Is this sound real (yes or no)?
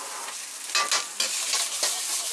yes